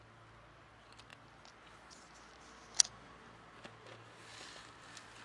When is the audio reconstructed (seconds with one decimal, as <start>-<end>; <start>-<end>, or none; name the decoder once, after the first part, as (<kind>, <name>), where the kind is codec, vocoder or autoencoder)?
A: none